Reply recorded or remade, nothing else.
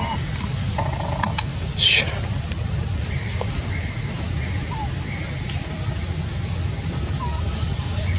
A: recorded